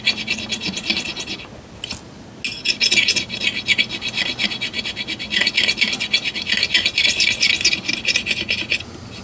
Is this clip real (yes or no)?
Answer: yes